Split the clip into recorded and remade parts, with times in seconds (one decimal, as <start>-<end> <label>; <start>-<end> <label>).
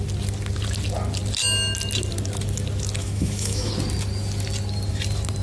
0.0-3.0 recorded; 3.0-3.7 remade; 3.7-5.4 recorded